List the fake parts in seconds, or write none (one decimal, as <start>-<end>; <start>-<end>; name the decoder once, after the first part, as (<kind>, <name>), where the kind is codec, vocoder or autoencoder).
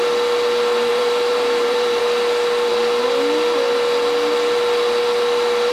0.9-2.0 (vocoder, BigVGAN v2)